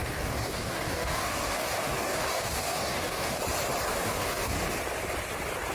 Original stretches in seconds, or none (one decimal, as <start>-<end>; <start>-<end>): 3.4-3.9; 4.8-5.7